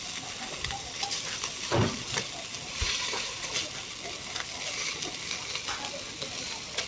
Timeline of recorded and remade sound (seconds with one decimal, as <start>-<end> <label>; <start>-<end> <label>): 0.0-2.8 recorded; 2.8-3.5 remade; 3.5-6.9 recorded